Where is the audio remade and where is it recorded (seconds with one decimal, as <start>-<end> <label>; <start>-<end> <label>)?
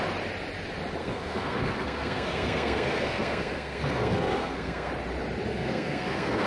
0.0-1.0 recorded; 1.0-4.9 remade; 4.9-5.5 recorded; 5.5-6.5 remade